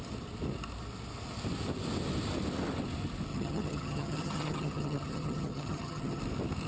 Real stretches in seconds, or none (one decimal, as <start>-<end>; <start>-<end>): 0.0-3.3; 6.2-6.7

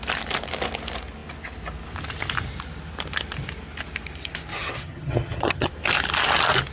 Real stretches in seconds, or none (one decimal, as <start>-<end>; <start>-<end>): 0.0-4.5; 5.7-6.7

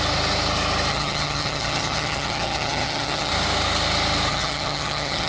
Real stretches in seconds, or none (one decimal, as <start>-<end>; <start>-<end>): 0.0-0.9; 3.3-4.3

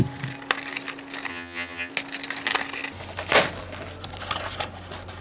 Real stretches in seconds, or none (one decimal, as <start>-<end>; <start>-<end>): 0.0-1.3; 1.9-5.2

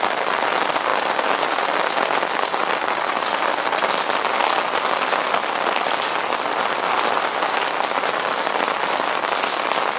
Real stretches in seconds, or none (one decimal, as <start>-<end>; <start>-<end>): 0.0-10.0

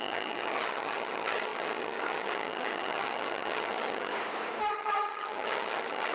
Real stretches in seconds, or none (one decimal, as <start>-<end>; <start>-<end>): 4.1-4.7